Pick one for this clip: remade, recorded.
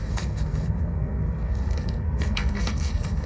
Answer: remade